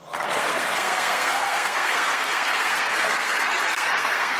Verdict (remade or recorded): remade